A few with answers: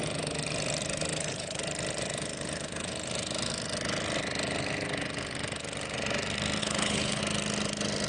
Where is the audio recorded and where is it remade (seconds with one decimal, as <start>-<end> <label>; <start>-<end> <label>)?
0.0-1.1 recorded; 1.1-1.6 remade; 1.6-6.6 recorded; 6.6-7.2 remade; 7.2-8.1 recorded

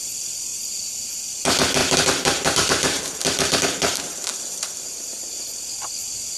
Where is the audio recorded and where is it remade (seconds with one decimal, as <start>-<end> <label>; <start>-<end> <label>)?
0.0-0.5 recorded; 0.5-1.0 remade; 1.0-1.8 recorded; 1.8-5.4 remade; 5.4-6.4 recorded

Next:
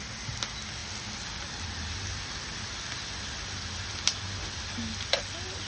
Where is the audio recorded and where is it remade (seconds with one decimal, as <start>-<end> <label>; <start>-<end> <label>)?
0.0-5.7 recorded